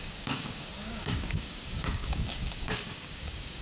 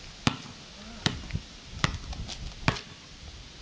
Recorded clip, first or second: second